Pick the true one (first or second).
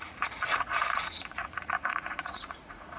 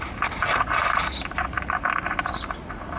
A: second